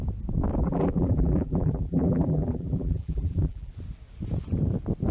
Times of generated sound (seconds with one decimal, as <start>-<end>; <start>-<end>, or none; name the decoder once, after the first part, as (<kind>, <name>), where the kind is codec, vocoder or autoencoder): 0.6-3.7 (vocoder, BigVGAN v2)

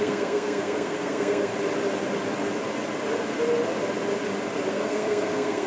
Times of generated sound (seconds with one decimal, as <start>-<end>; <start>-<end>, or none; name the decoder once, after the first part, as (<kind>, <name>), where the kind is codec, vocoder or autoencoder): 0.0-1.5 (codec, SNAC); 4.7-5.7

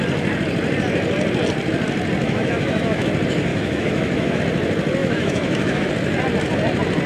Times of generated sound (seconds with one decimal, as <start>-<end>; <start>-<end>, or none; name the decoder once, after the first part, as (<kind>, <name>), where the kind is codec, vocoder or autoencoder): 2.2-3.1 (autoencoder, DAC-VAE); 3.5-4.4; 5.0-5.9

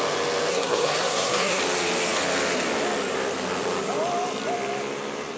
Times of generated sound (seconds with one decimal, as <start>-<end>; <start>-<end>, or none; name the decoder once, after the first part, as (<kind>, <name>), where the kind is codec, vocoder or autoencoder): 0.5-1.6 (codec, SNAC)

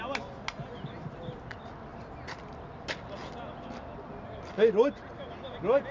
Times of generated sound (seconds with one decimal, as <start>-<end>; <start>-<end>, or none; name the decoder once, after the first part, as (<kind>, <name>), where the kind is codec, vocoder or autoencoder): none

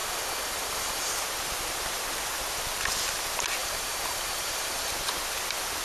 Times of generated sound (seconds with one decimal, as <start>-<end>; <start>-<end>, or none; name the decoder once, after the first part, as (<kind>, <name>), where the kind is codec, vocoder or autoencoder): 0.0-1.1 (vocoder, BigVGAN v2); 3.6-4.9